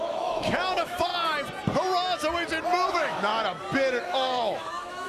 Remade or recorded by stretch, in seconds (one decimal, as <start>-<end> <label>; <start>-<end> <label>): 0.0-1.1 remade; 1.1-2.9 recorded; 2.9-3.3 remade; 3.3-4.0 recorded; 4.0-5.1 remade

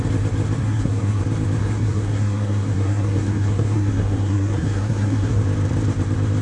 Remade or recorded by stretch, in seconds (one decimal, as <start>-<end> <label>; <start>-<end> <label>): 0.0-0.6 recorded; 0.6-1.2 remade; 1.2-1.6 recorded; 1.6-5.4 remade; 5.4-6.4 recorded

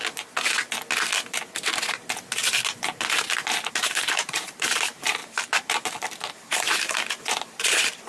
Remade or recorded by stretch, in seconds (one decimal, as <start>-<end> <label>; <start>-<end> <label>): 0.0-3.7 recorded; 3.7-8.1 remade

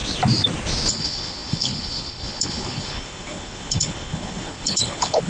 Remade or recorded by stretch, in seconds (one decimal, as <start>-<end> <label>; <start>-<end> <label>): 0.0-0.9 recorded; 0.9-5.3 remade

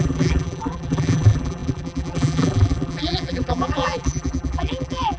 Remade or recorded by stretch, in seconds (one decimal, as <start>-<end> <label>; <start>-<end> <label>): 0.0-5.2 remade